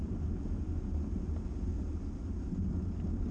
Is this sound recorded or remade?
recorded